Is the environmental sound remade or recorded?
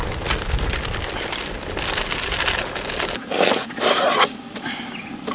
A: recorded